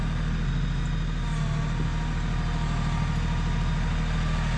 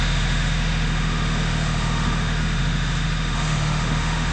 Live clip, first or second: first